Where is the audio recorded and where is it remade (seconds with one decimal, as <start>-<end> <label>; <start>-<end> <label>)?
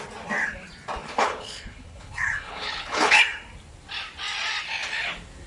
0.0-1.0 recorded; 1.0-3.2 remade; 3.2-5.5 recorded